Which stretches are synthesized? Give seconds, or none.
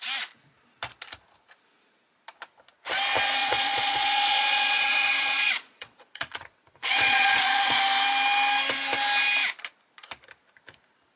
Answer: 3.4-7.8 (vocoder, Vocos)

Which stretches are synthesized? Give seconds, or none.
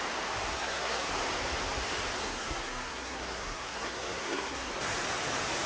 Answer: 0.5-1.1 (codec, SNAC); 2.2-4.7